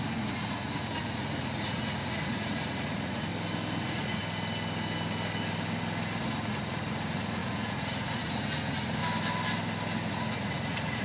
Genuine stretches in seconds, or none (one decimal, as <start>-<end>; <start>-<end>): 3.3-3.8; 4.2-6.2; 9.0-10.1